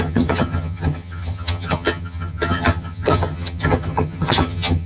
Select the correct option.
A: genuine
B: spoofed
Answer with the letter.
B